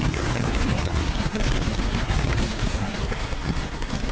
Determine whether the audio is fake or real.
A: fake